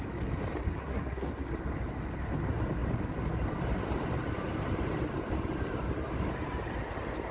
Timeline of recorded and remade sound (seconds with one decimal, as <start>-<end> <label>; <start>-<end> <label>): 0.0-0.7 recorded; 0.7-1.3 remade; 1.3-7.3 recorded

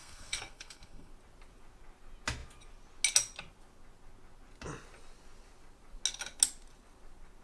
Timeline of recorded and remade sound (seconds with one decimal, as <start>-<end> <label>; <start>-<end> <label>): 0.0-1.1 remade; 1.1-7.4 recorded

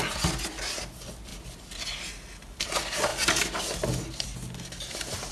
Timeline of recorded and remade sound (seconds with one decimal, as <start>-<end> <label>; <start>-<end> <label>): 0.0-5.3 recorded

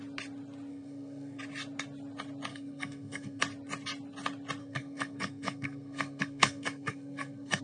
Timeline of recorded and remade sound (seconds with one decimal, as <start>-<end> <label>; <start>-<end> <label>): 0.0-0.7 recorded; 0.7-1.4 remade; 1.4-2.5 recorded; 2.5-3.4 remade; 3.4-4.6 recorded; 4.6-7.6 remade

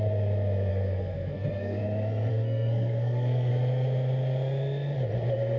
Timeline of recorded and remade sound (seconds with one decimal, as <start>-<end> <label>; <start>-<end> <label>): 0.0-0.7 recorded; 0.7-1.8 remade; 1.8-2.3 recorded; 2.3-3.5 remade; 3.5-5.6 recorded

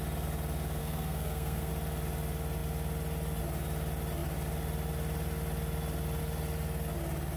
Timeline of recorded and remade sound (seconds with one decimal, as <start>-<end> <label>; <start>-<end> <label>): 0.0-0.8 recorded; 0.8-1.7 remade; 1.7-7.4 recorded

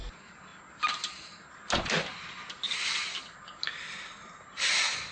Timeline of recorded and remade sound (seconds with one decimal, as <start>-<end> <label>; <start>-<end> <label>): 0.0-5.1 recorded

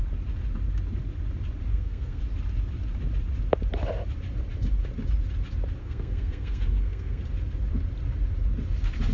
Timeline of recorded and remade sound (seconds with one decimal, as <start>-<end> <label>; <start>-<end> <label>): 0.0-1.7 recorded; 1.7-2.2 remade; 2.2-5.8 recorded; 5.8-7.2 remade; 7.2-9.1 recorded